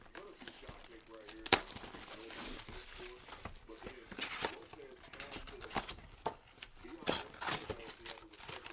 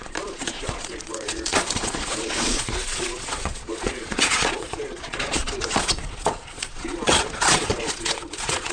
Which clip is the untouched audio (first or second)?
first